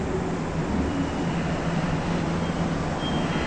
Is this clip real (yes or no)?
no